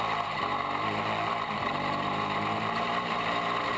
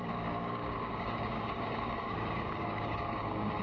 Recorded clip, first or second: first